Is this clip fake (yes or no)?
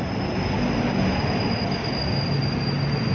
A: no